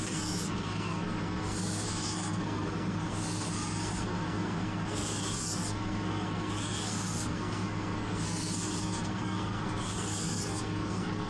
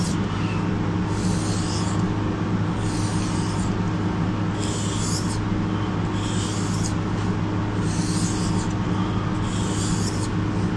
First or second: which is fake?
first